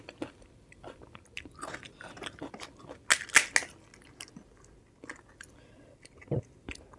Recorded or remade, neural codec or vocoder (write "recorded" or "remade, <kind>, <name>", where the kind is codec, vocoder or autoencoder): recorded